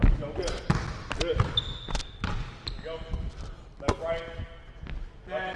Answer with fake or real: real